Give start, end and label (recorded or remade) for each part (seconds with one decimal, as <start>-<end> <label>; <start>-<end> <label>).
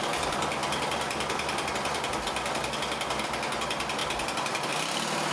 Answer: 0.0-5.3 recorded